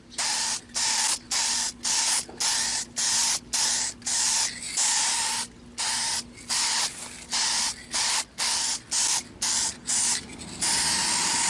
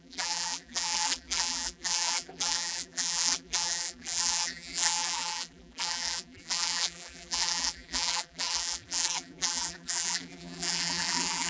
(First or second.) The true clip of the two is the first